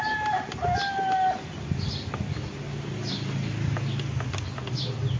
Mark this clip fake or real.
real